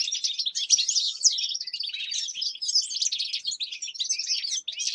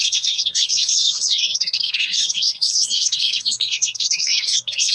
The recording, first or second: first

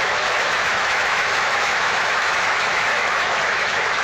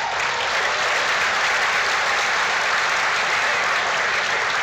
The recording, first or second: second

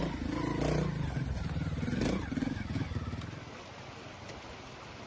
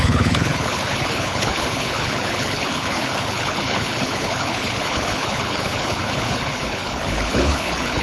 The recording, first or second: first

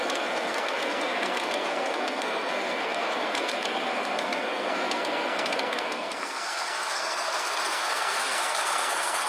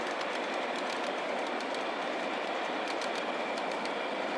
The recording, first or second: second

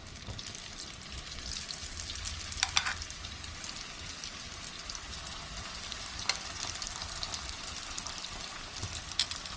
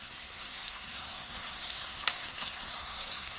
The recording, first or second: first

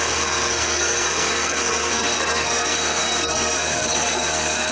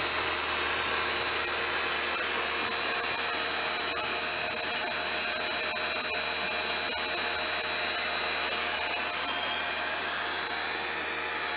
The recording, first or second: second